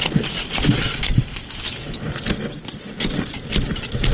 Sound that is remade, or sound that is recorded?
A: recorded